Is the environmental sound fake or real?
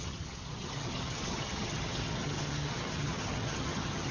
fake